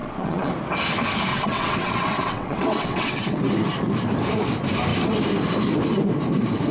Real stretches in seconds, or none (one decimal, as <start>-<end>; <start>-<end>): 0.5-1.3; 3.4-6.7